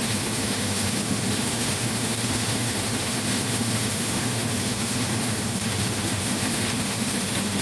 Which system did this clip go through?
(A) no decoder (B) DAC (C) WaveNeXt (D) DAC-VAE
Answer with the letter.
D